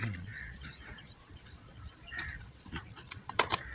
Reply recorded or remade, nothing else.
remade